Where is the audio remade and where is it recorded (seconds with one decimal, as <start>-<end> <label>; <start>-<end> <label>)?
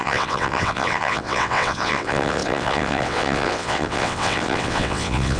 0.0-5.4 remade